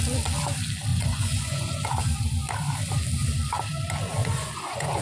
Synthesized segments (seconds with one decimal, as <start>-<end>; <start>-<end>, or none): 0.9-1.9; 4.2-5.0